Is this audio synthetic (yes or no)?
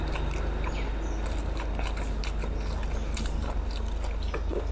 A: no